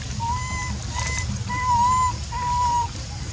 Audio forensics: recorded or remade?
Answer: recorded